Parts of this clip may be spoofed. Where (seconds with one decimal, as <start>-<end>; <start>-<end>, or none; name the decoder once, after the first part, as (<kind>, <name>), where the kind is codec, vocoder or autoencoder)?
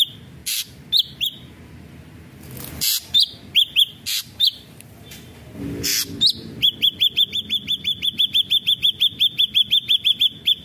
none